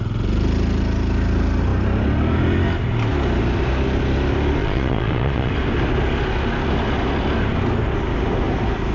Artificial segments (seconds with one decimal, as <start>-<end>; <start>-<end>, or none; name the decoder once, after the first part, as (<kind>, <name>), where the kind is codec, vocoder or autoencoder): 4.6-5.5 (vocoder, Vocos)